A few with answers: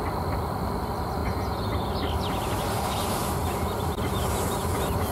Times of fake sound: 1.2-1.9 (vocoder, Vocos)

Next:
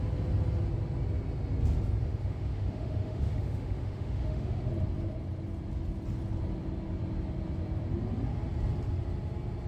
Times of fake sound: 2.0-4.7 (autoencoder, DAC-VAE)

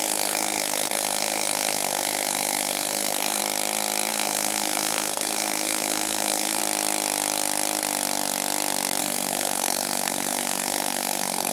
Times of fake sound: 0.0-3.4 (codec, SNAC); 4.1-6.6; 9.0-11.5

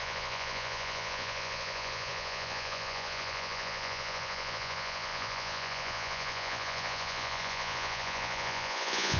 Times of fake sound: 0.0-9.2 (vocoder, Vocos)

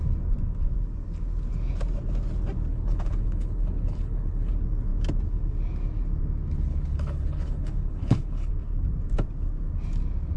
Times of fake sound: 2.7-4.5 (codec, HILCodec); 6.7-8.5